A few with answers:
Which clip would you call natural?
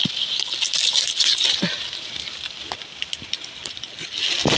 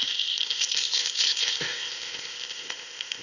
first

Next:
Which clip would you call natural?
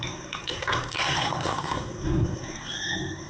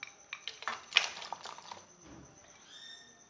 second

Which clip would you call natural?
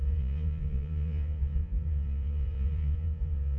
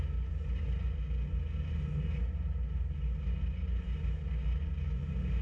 second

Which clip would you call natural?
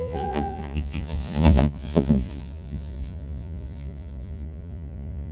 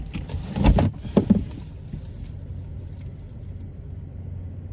second